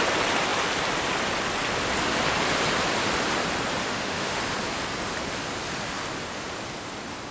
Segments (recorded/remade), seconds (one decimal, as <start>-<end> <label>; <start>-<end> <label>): 0.0-3.8 recorded; 3.8-4.4 remade; 4.4-7.3 recorded